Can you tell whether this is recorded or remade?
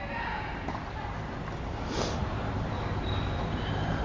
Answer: recorded